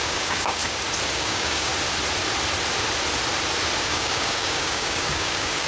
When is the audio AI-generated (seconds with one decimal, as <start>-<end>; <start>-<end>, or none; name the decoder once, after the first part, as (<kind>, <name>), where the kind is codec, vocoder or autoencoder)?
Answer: 0.0-0.6 (codec, DAC); 1.1-1.7; 3.8-5.7